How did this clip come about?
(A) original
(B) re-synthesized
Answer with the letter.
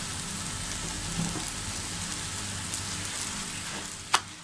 A